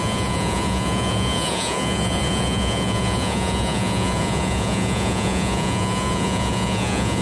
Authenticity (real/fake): fake